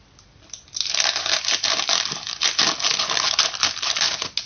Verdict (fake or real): real